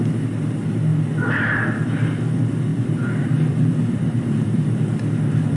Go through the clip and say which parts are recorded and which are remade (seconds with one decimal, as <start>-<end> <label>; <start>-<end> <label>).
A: 0.0-2.7 recorded; 2.7-5.6 remade